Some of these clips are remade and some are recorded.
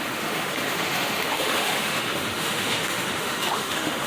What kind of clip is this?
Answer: remade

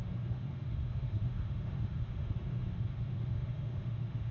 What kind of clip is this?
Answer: remade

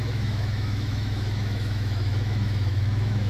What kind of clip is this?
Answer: remade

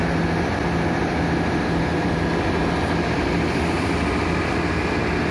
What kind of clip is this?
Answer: recorded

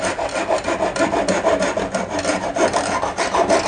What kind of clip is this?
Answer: recorded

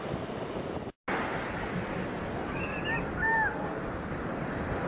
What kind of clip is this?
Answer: recorded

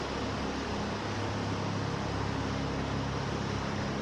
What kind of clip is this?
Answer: recorded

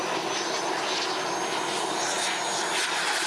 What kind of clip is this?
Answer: recorded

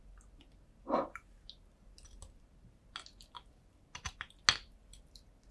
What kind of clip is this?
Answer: recorded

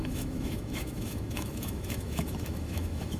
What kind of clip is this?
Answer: remade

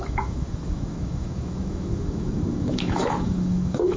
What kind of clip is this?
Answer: remade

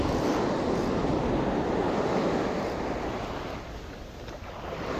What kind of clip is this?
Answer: recorded